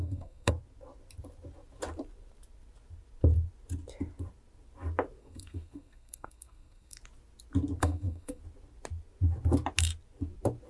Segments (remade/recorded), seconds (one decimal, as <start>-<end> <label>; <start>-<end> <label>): 0.0-0.5 remade; 0.5-5.2 recorded; 5.2-7.0 remade; 7.0-7.8 recorded; 7.8-8.4 remade; 8.4-10.7 recorded